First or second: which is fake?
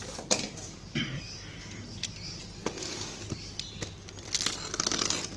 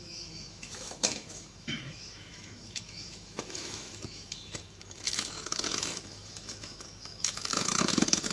second